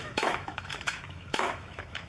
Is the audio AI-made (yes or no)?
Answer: yes